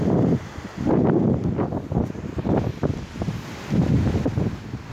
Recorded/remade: recorded